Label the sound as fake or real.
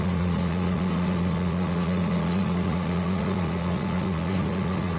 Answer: fake